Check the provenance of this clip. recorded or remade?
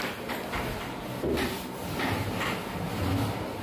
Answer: recorded